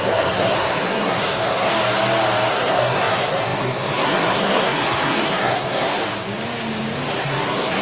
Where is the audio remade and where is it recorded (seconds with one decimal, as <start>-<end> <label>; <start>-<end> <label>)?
0.0-1.7 remade; 1.7-2.5 recorded; 2.5-6.0 remade; 6.0-7.1 recorded; 7.1-7.8 remade